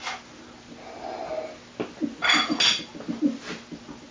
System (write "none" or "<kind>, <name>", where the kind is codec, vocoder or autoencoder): none